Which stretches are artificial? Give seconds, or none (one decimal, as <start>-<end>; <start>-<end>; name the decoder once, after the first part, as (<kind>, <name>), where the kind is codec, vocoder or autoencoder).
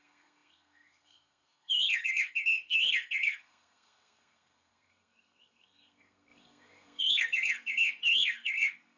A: 0.0-9.0 (codec, SNAC)